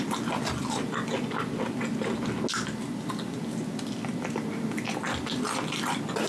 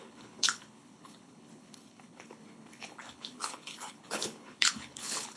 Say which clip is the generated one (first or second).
second